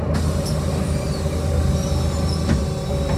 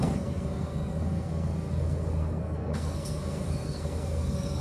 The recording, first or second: first